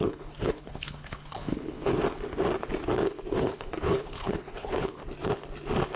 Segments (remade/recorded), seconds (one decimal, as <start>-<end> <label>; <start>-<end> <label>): 0.0-1.9 remade; 1.9-3.3 recorded; 3.3-5.0 remade; 5.0-6.0 recorded